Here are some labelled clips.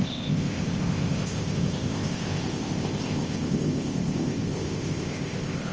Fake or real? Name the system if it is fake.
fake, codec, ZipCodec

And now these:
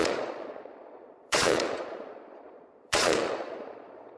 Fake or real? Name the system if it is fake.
fake, vocoder, Vocos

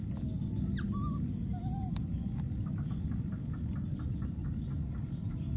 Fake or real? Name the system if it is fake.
real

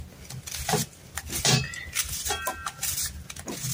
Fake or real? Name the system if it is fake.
real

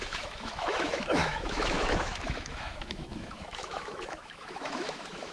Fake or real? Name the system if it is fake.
fake, autoencoder, DAC-VAE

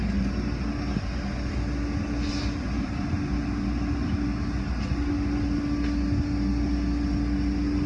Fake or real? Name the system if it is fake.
real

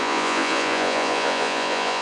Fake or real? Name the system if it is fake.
fake, vocoder, Vocos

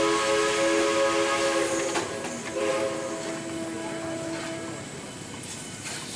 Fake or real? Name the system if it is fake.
real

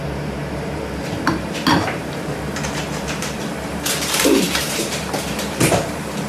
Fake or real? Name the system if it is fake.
fake, vocoder, BigVGAN v2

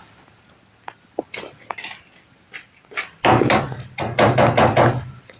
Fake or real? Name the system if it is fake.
fake, vocoder, BigVGAN v2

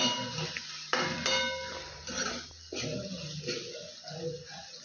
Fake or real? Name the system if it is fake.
real